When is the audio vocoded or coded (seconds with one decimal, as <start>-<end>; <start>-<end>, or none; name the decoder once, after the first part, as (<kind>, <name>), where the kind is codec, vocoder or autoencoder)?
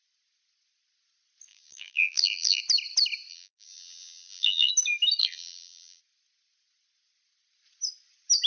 1.5-2.6 (vocoder, BigVGAN v2); 3.3-4.7; 5.2-6.0